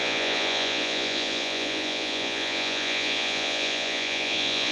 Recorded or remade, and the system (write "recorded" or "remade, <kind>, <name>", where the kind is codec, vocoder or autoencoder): remade, vocoder, Vocos